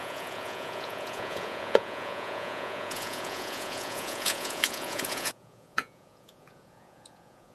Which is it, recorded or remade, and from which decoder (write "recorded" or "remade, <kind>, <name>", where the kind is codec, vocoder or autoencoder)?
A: remade, vocoder, Vocos